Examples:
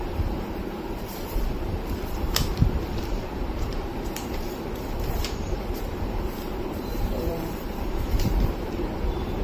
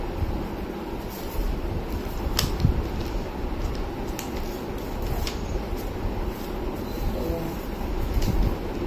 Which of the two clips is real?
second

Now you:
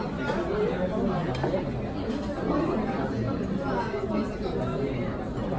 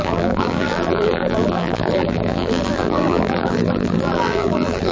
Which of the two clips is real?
first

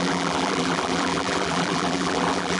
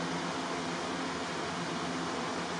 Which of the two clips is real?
second